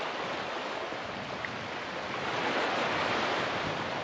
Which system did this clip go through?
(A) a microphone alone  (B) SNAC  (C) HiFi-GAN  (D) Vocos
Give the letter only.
A